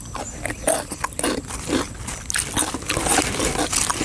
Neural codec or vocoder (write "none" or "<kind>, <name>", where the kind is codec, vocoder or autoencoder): none